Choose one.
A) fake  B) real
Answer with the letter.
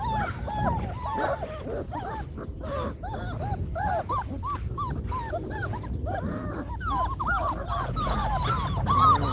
B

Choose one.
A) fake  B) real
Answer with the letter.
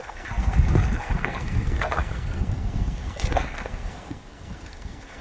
A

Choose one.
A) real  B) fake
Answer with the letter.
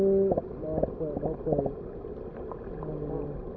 A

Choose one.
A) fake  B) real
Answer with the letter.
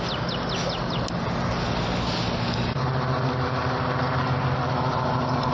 B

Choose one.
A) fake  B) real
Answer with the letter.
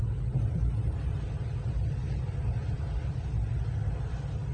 B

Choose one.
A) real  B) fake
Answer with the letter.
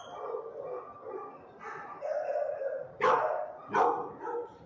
A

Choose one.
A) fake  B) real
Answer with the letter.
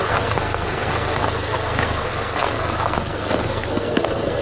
A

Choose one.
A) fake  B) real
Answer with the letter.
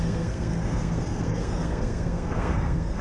A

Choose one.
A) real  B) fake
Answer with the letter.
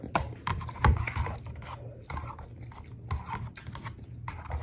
A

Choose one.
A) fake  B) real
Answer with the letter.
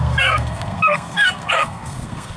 A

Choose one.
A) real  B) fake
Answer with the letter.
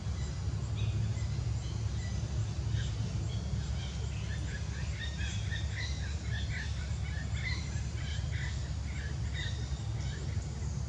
A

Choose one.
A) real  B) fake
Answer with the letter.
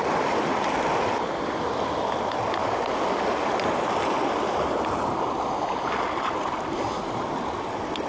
A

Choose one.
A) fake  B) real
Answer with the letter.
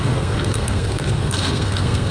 A